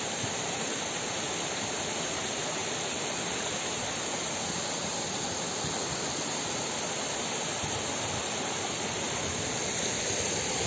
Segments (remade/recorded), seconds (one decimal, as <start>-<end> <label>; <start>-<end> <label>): 0.0-10.7 recorded